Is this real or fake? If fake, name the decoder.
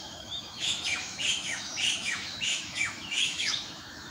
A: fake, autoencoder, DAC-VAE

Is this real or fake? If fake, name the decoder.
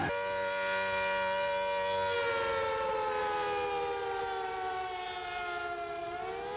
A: real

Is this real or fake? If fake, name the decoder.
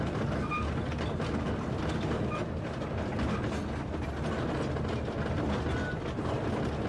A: real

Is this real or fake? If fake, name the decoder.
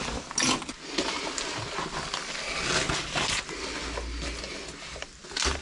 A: real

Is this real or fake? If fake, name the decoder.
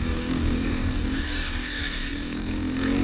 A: fake, codec, DAC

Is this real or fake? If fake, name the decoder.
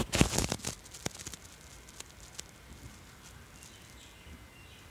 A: real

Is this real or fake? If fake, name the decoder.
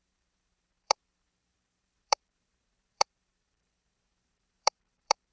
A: fake, vocoder, BigVGAN v2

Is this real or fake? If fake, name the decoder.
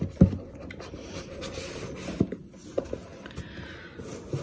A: real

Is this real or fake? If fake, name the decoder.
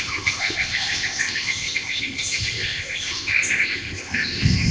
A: fake, codec, ZipCodec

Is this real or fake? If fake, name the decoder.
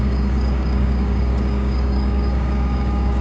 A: fake, codec, DAC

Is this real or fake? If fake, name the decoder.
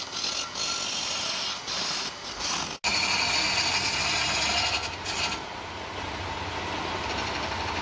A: real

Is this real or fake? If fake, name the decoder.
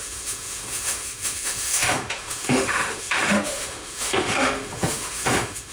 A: fake, autoencoder, DAC-VAE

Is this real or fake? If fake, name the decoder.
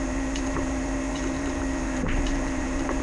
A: fake, vocoder, BigVGAN v2